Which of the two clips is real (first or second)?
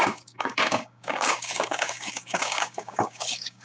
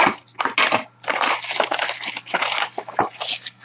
second